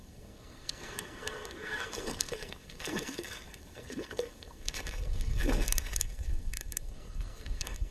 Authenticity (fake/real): fake